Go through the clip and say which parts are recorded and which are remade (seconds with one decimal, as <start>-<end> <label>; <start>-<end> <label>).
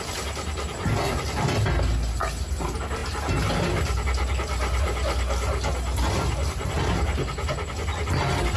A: 0.0-8.6 recorded